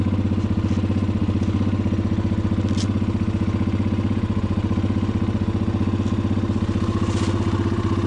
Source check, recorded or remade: recorded